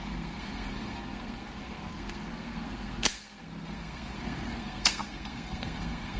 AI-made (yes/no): yes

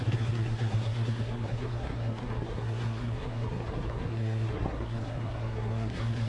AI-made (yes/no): yes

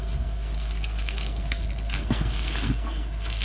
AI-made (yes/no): yes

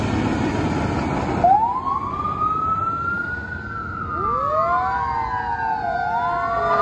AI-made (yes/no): no